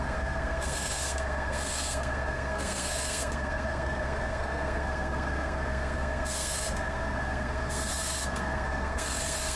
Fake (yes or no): yes